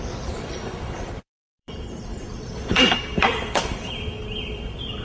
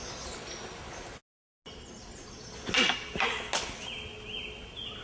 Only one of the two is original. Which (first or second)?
second